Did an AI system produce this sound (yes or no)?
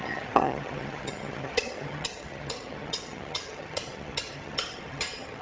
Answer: yes